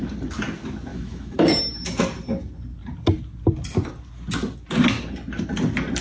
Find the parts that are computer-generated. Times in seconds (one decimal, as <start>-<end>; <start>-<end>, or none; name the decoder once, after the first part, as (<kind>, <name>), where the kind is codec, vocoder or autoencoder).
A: 0.9-2.0 (autoencoder, DAC-VAE)

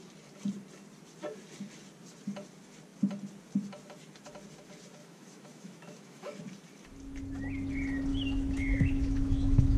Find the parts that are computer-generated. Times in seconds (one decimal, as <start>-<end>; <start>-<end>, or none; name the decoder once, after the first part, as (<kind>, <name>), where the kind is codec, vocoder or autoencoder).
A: 5.0-6.4 (autoencoder, DAC-VAE); 8.1-9.8

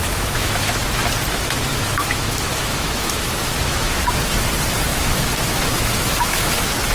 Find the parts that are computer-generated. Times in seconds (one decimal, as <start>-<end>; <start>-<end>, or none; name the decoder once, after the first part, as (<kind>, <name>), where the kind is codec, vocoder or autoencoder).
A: 0.0-0.8 (autoencoder, DAC-VAE); 1.7-3.9; 4.9-6.5

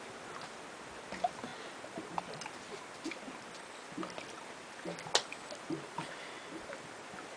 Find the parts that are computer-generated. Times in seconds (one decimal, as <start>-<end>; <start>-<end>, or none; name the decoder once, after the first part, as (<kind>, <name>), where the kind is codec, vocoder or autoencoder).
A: none

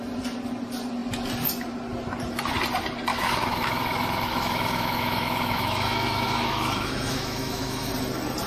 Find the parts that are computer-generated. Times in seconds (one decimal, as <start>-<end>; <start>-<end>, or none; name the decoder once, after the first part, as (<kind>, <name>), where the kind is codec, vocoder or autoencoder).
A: 3.1-7.9 (autoencoder, DAC-VAE)

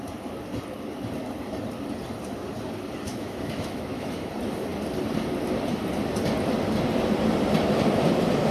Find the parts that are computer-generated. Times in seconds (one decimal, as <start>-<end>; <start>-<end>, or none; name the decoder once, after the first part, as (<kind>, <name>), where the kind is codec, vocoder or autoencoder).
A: 3.1-4.3 (autoencoder, DAC-VAE)

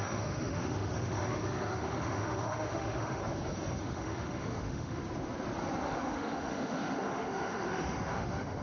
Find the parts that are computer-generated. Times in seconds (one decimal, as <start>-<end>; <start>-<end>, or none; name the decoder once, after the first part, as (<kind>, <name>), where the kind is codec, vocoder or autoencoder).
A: 0.0-3.2 (autoencoder, DAC-VAE); 3.8-5.0; 5.8-8.6

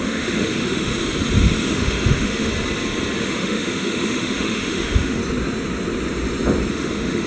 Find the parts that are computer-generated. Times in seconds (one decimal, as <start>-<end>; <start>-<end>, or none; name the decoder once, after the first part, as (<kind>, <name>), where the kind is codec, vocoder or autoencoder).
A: 0.0-0.9 (autoencoder, DAC-VAE); 1.7-2.5; 3.2-5.2; 6.7-7.3